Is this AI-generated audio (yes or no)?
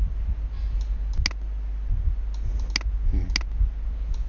no